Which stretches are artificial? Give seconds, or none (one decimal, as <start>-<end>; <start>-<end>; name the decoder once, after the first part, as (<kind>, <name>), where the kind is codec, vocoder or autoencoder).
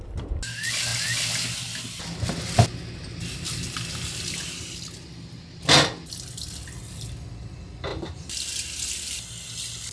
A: none